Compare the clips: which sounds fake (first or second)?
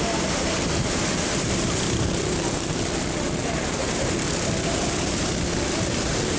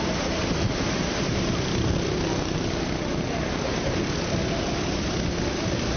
first